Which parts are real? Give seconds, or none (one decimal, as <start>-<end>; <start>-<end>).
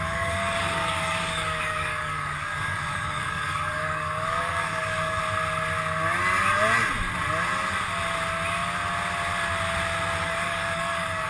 5.2-10.2